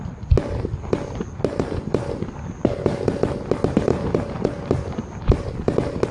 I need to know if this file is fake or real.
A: real